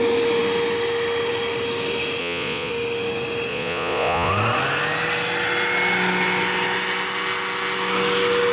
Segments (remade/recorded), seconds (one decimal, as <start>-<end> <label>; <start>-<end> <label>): 0.0-2.2 recorded; 2.2-2.7 remade; 2.7-3.5 recorded; 3.5-4.3 remade; 4.3-8.5 recorded

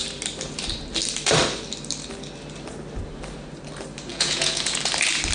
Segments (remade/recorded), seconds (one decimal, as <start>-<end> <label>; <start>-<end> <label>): 0.0-4.1 recorded; 4.1-4.8 remade; 4.8-5.3 recorded